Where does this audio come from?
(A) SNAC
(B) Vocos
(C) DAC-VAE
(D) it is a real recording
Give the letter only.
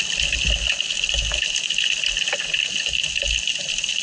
D